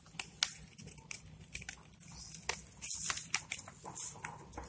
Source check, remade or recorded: recorded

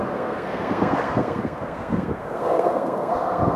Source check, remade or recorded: remade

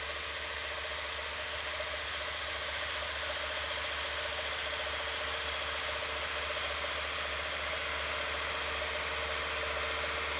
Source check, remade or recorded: recorded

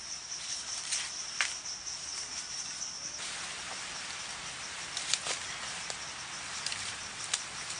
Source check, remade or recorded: recorded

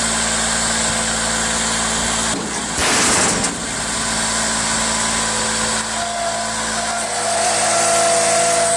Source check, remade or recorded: recorded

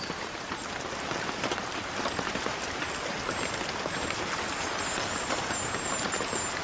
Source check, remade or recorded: recorded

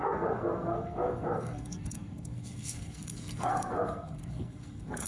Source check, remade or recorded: remade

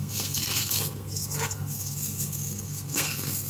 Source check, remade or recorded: remade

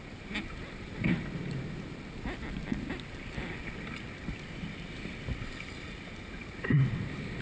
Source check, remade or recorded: recorded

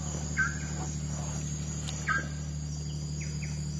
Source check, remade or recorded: recorded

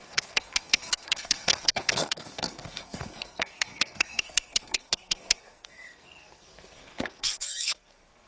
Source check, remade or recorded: remade